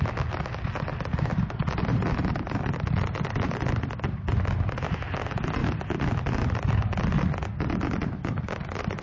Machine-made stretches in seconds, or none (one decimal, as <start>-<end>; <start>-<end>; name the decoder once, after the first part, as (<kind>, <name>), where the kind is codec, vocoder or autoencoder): none